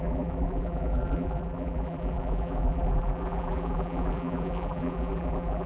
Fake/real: fake